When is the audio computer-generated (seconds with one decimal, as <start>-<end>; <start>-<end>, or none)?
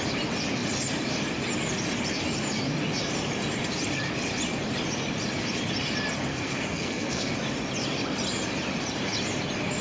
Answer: 6.3-7.3